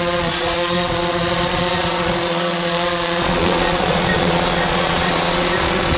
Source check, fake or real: fake